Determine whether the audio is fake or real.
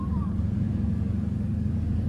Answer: fake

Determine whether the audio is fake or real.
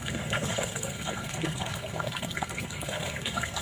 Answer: fake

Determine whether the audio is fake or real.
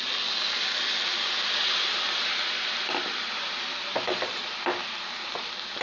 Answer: real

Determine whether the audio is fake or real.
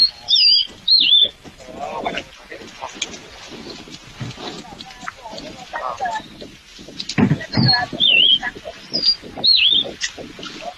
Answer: real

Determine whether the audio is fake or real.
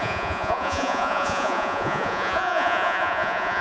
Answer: fake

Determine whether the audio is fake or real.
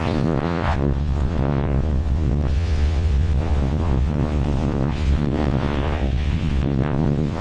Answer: fake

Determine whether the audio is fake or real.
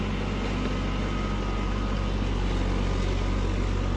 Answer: real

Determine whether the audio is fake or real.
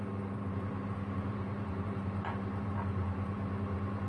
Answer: fake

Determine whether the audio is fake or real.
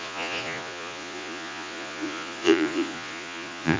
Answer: fake